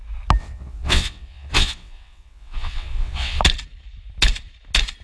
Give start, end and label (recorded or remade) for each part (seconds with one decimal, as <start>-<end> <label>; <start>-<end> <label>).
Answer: 0.0-0.4 recorded; 0.4-3.4 remade; 3.4-5.0 recorded